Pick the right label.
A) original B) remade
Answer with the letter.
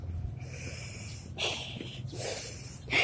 A